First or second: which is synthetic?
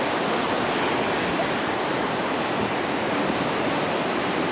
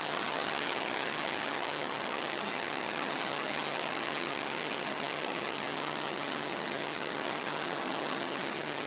second